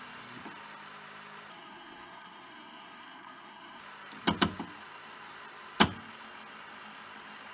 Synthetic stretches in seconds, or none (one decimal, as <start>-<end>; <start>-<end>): 1.5-3.8